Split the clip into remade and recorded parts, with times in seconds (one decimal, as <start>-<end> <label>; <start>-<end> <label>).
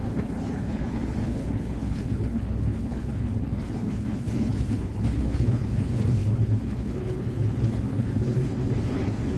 0.0-9.4 remade